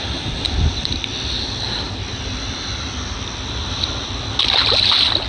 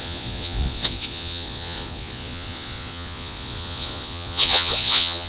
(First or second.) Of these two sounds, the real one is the first